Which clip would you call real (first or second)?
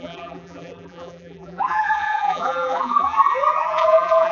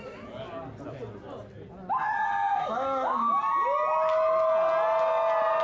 second